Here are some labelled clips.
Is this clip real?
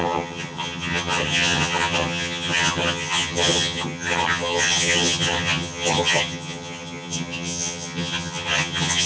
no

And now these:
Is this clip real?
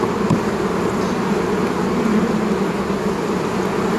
yes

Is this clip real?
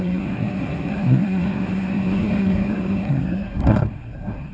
no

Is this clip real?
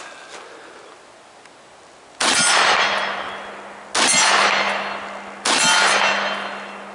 yes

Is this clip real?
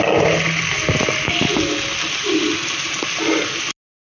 yes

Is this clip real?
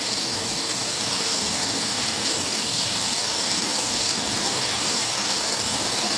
no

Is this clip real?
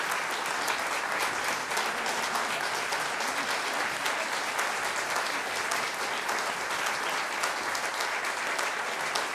yes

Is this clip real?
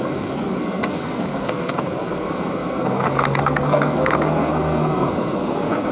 no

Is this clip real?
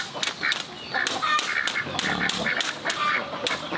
yes